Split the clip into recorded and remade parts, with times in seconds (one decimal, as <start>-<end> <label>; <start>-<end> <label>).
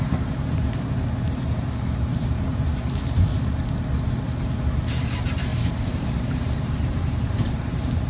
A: 0.0-3.3 remade; 3.3-4.4 recorded; 4.4-8.1 remade